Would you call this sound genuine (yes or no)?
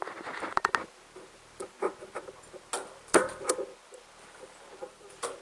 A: yes